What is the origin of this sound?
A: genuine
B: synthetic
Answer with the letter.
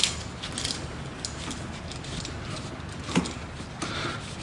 A